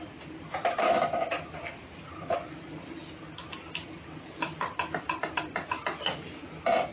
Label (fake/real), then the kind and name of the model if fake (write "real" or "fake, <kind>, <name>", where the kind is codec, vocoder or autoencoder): real